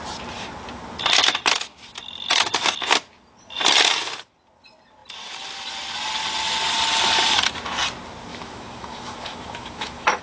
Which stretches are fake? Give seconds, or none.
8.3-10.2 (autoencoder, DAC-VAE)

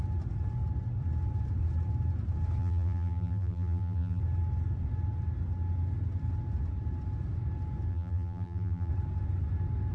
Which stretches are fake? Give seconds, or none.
2.6-4.2 (vocoder, BigVGAN v2); 7.9-8.9